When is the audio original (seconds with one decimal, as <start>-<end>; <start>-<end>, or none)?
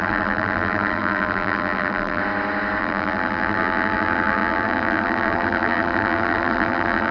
2.2-2.8